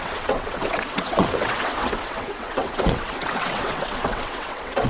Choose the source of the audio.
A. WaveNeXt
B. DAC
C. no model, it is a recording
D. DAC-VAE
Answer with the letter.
A